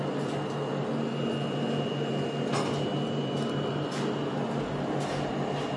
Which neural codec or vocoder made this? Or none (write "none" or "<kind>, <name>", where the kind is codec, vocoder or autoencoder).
none